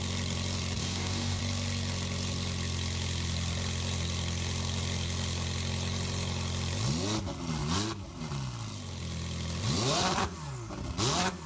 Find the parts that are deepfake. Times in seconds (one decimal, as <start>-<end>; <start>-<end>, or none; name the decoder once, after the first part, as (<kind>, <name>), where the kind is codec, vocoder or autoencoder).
0.8-1.4 (codec, DAC)